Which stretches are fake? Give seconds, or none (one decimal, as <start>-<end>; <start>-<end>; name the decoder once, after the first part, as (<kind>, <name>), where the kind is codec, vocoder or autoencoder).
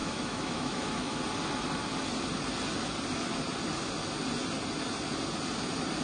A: 0.0-1.2 (autoencoder, DAC-VAE)